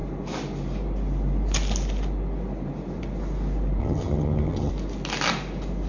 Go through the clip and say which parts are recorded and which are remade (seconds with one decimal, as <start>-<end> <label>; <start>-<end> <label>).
0.0-3.8 recorded; 3.8-4.7 remade; 4.7-5.9 recorded